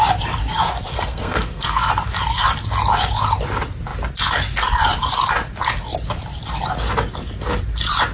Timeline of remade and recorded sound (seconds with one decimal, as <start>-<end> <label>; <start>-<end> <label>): 0.0-0.9 recorded; 0.9-1.9 remade; 1.9-8.1 recorded